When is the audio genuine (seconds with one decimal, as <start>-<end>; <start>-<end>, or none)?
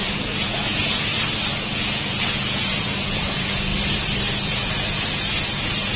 1.1-1.6; 3.7-4.3